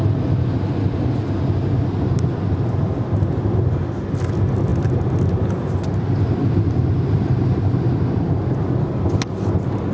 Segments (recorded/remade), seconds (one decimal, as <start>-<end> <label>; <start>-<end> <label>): 0.0-9.9 recorded